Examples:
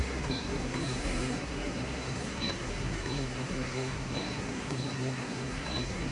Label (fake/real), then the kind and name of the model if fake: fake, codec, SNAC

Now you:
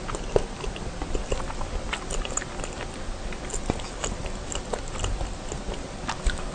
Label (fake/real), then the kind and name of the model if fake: real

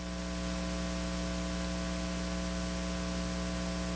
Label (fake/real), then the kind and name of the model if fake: real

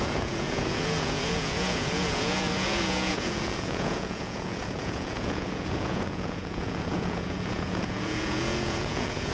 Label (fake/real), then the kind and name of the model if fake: fake, vocoder, Vocos